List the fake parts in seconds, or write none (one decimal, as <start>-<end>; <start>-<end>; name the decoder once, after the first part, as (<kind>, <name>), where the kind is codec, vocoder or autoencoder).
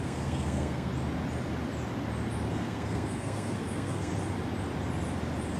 0.0-0.9 (codec, SNAC); 2.5-4.1